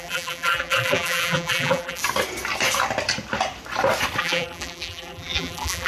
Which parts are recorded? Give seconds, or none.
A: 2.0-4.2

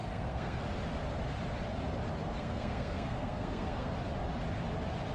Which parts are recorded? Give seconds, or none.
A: 0.6-2.2; 3.9-5.1

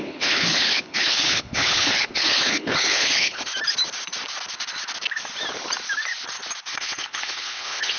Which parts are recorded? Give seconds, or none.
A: 3.5-6.7

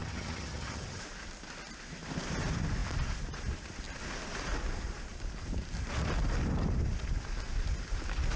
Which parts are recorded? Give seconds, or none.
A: 1.0-8.4

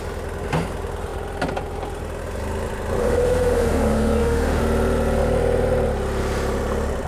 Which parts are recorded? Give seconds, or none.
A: 0.0-3.0; 4.6-7.1

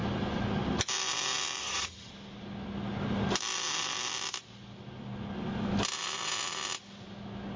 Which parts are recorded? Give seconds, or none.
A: 0.0-1.6; 2.1-7.6

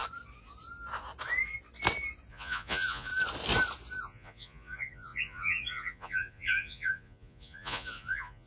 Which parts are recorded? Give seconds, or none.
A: 0.0-2.3; 3.1-4.0